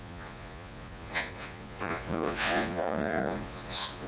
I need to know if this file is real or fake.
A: fake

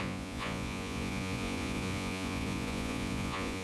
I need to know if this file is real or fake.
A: fake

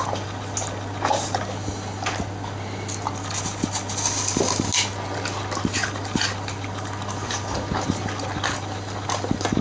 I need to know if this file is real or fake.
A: real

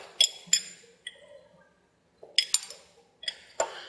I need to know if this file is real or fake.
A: real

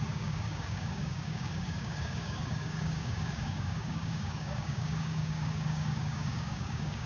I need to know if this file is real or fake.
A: fake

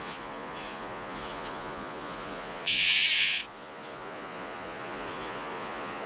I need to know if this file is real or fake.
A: fake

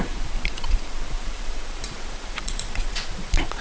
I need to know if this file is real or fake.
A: fake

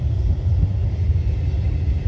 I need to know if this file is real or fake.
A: real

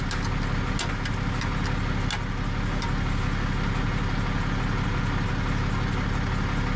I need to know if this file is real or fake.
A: real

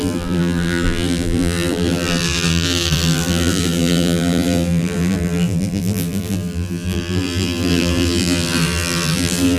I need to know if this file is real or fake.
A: fake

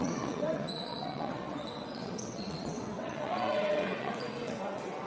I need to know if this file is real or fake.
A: fake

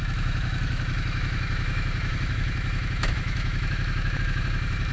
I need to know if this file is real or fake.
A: fake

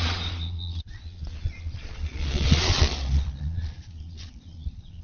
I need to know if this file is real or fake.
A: fake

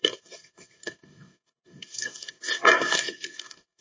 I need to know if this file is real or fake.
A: fake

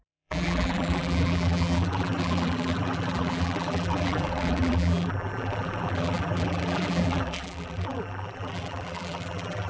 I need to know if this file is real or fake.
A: fake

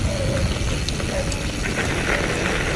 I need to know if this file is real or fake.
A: real